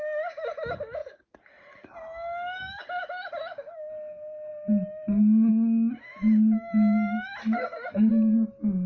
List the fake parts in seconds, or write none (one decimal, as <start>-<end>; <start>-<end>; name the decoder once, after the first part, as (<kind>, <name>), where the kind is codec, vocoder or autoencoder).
7.4-8.1 (codec, SNAC)